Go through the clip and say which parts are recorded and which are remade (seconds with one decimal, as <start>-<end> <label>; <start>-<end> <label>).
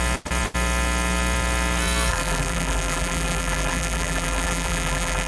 0.0-2.1 recorded; 2.1-5.3 remade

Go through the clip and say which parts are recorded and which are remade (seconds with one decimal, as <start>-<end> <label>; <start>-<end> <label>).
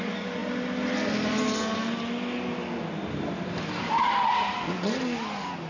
0.0-5.7 recorded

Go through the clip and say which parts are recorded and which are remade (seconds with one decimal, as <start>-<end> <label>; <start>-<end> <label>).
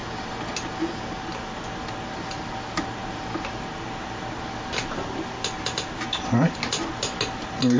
0.0-7.8 recorded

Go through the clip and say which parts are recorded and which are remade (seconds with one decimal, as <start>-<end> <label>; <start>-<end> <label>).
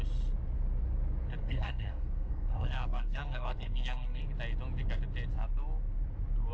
0.0-1.4 recorded; 1.4-4.2 remade; 4.2-6.5 recorded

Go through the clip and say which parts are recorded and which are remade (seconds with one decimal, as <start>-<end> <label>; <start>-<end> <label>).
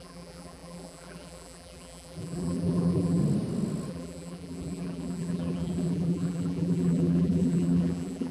0.0-3.2 remade; 3.2-3.9 recorded; 3.9-8.3 remade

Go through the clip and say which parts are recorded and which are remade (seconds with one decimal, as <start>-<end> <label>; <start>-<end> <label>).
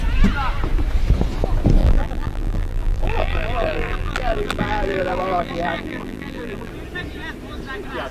0.0-1.8 recorded; 1.8-6.7 remade; 6.7-8.1 recorded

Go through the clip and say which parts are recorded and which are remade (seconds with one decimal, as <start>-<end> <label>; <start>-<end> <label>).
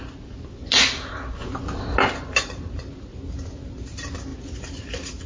0.0-5.3 recorded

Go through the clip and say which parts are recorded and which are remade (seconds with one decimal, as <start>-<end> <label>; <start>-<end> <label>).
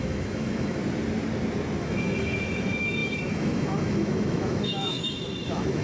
0.0-0.8 remade; 0.8-1.8 recorded; 1.8-5.8 remade